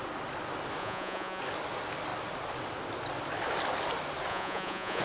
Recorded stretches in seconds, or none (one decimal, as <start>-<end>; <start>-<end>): 0.0-0.8; 1.4-4.3